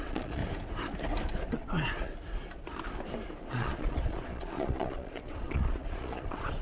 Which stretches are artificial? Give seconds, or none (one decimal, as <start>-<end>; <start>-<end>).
0.0-0.4; 1.5-2.1; 3.5-6.6